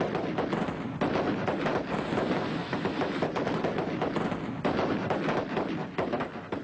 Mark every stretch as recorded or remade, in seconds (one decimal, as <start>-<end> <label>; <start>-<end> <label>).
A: 0.0-6.6 recorded